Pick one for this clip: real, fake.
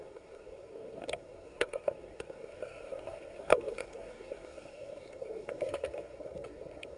fake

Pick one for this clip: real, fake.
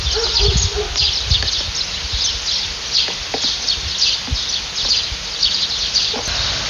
real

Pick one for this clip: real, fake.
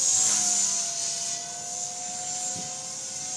real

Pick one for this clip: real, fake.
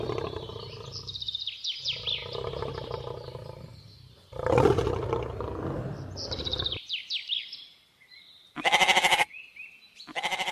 real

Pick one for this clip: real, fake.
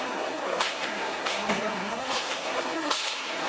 fake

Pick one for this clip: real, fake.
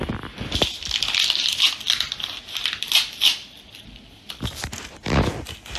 real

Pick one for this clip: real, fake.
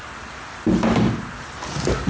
real